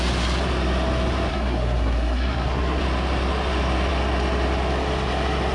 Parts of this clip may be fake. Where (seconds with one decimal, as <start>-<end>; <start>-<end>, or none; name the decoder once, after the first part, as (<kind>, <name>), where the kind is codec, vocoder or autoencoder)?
1.3-2.8 (codec, SNAC)